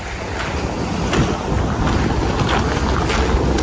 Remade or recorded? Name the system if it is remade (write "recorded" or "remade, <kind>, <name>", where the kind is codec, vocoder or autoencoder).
recorded